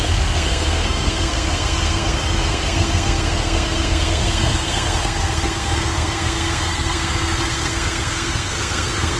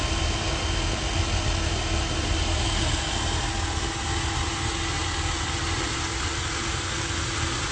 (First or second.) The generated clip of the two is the first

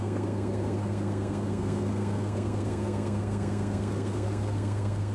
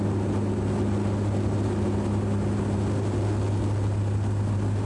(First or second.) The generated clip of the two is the first